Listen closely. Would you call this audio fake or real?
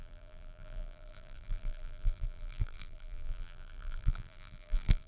fake